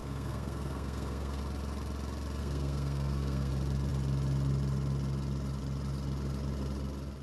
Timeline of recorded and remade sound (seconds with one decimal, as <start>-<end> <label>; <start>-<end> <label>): 0.0-1.4 remade; 1.4-2.4 recorded; 2.4-3.5 remade; 3.5-7.2 recorded